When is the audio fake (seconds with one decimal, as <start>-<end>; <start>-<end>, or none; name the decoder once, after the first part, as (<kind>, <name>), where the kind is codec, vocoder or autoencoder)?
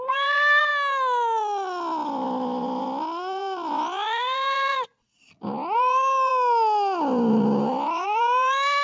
0.0-0.7 (vocoder, BigVGAN v2); 2.8-6.3; 7.3-8.8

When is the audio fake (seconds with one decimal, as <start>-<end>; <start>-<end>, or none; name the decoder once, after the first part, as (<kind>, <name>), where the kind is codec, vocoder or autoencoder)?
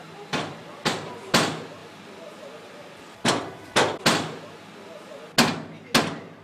1.8-4.0 (vocoder, BigVGAN v2)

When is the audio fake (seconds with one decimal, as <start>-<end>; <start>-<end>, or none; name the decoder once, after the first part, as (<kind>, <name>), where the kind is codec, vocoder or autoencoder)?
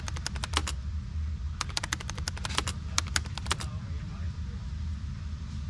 0.6-4.0 (vocoder, BigVGAN v2)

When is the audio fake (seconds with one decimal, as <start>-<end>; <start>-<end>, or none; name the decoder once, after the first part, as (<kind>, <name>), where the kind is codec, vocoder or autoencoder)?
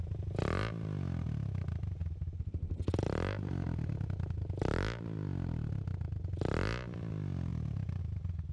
2.0-2.8 (vocoder, BigVGAN v2); 7.5-8.0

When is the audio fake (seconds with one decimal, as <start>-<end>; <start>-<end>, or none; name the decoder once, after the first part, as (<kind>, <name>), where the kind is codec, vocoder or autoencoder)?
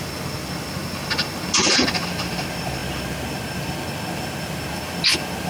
none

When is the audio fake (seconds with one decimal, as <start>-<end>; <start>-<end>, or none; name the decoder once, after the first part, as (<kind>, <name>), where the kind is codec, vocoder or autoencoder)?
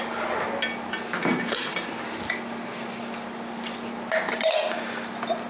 1.7-2.2 (vocoder, BigVGAN v2)